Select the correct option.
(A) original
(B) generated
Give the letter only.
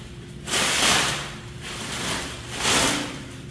A